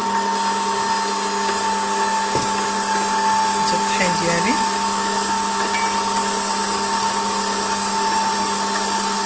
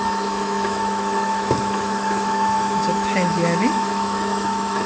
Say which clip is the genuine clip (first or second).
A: first